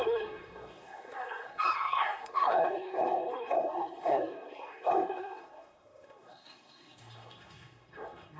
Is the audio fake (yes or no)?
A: yes